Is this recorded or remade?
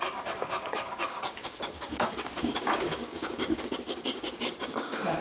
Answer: remade